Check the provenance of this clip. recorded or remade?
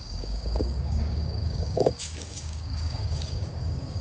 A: remade